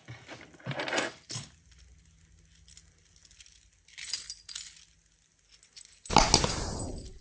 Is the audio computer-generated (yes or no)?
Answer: no